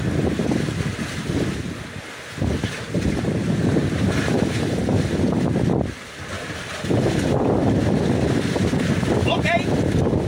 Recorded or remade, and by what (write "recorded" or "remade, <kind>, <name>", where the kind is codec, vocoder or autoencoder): recorded